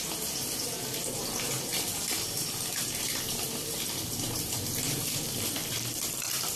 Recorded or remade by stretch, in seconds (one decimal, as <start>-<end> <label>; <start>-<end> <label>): 0.0-6.6 recorded